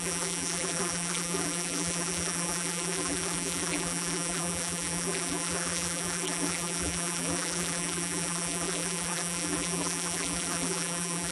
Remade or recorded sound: remade